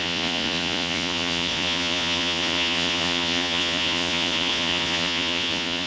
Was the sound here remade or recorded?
remade